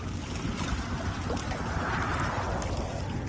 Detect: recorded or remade recorded